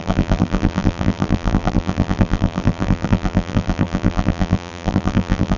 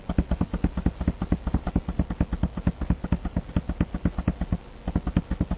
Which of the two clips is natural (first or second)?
second